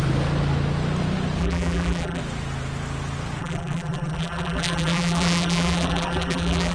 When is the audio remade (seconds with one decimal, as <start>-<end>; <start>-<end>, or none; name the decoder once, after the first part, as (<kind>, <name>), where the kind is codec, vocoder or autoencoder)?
1.4-2.2 (vocoder, BigVGAN v2); 3.4-6.7